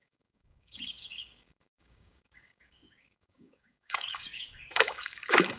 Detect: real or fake fake